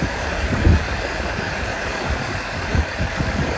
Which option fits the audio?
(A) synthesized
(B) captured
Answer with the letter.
A